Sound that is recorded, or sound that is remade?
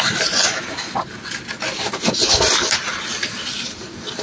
recorded